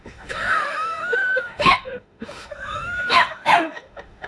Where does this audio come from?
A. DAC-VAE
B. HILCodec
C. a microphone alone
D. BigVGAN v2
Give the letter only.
A